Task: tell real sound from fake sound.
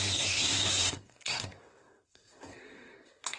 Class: fake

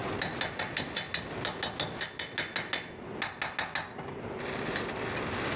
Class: real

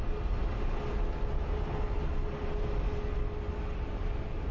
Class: real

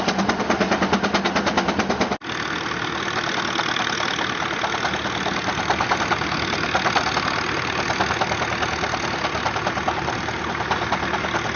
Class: real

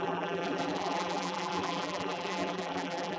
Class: fake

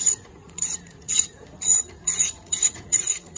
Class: fake